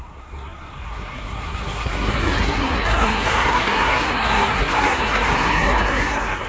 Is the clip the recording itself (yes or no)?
no